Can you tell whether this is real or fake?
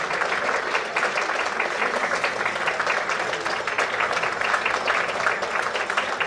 real